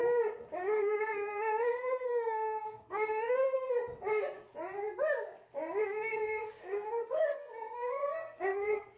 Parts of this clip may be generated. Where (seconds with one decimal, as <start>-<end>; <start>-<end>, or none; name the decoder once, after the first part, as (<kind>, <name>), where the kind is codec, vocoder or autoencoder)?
0.6-3.8 (codec, SNAC); 5.8-9.0